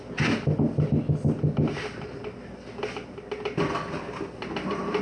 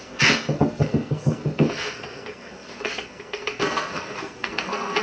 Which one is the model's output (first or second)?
second